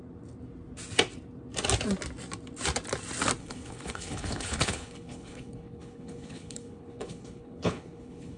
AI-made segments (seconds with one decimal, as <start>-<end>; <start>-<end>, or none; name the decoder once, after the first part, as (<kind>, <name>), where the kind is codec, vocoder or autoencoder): 3.4-8.4 (codec, HILCodec)